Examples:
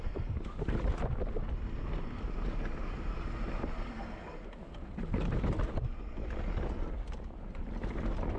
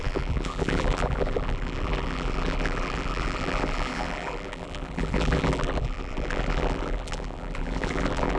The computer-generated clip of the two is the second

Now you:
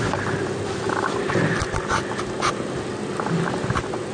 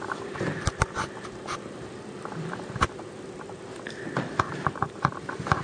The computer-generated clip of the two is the second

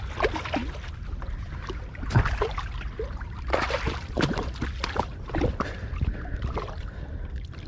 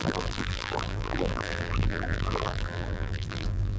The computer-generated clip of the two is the second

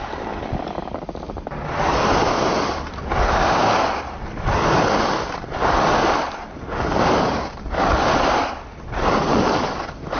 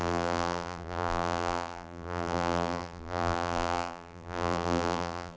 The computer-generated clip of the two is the second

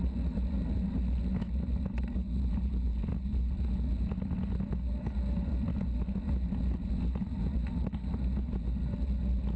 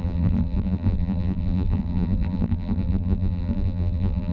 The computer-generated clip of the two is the second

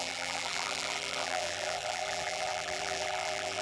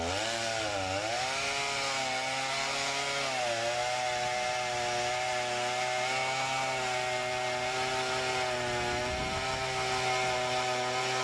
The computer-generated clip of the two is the first